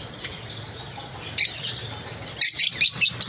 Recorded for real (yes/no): yes